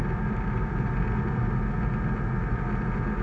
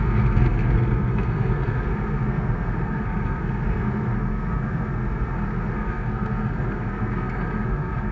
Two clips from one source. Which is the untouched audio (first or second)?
first